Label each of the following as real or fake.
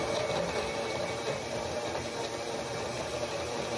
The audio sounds real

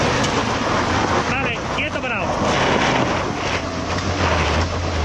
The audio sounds real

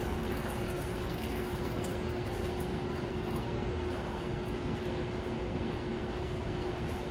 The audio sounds fake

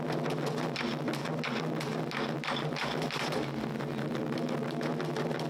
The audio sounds real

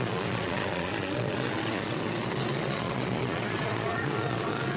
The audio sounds fake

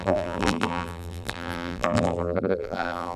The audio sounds fake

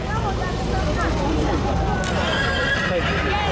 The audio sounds real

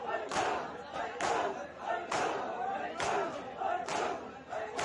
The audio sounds real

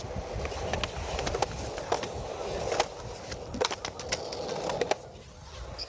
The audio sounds real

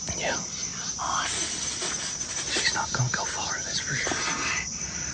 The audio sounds real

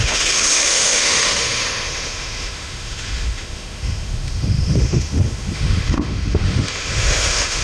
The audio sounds fake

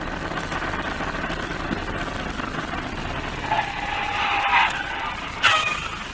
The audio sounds real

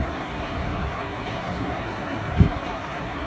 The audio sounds fake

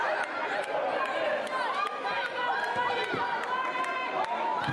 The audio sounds real